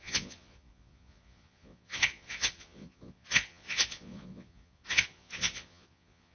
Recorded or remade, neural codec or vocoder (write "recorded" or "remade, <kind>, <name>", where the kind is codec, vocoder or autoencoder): remade, vocoder, Vocos